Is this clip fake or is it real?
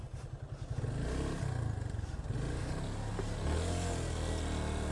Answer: real